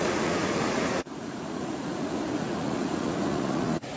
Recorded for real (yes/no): no